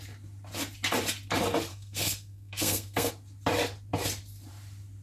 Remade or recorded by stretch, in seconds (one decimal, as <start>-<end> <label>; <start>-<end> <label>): 0.0-1.7 recorded; 1.7-3.1 remade; 3.1-5.0 recorded